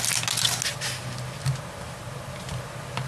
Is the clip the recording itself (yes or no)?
yes